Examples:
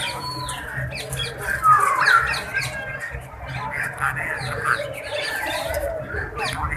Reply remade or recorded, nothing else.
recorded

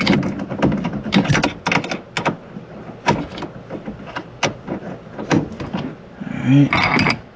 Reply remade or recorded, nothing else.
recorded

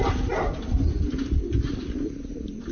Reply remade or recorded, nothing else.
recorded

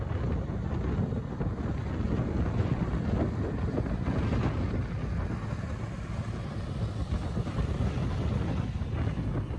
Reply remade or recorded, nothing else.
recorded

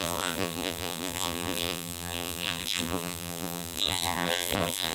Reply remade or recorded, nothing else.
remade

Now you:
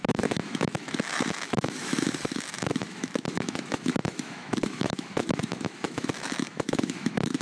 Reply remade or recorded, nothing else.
remade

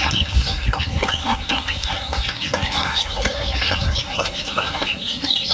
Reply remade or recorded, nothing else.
remade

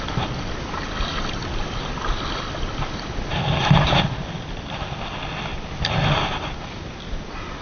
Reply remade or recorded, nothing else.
recorded